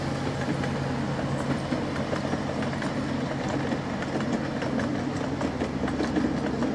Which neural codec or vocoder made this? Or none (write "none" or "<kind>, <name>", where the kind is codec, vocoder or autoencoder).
none